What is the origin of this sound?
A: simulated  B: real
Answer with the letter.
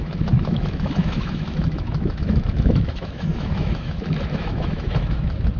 A